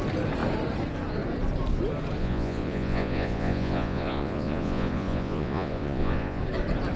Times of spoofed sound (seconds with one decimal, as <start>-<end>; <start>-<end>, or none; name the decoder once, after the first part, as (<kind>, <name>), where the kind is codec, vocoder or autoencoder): 2.2-6.4 (vocoder, Vocos)